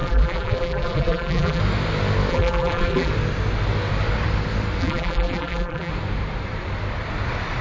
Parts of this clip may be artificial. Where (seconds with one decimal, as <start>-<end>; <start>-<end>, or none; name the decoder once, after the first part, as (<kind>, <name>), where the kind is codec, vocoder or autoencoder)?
0.0-1.6 (vocoder, BigVGAN v2); 2.3-3.1; 4.8-5.9